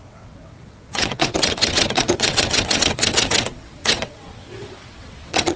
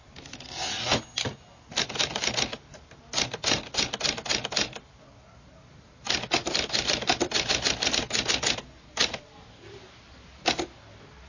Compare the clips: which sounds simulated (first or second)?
first